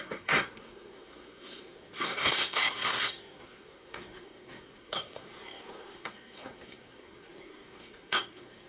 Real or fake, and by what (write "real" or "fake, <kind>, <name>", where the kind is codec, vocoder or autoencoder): fake, codec, SNAC